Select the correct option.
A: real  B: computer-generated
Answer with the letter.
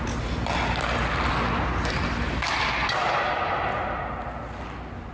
A